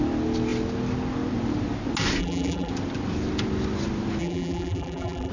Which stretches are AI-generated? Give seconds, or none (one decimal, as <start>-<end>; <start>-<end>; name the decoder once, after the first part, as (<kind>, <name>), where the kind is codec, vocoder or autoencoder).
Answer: 2.2-2.7 (vocoder, BigVGAN v2); 4.2-5.3